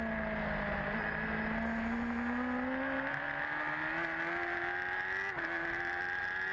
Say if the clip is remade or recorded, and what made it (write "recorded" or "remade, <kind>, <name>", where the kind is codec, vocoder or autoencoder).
recorded